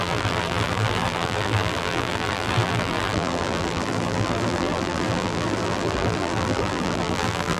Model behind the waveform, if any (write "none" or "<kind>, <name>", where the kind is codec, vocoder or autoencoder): vocoder, BigVGAN v2